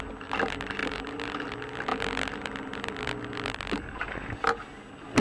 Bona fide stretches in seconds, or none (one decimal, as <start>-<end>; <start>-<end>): 0.0-5.2